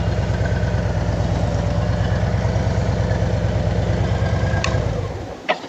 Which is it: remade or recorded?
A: recorded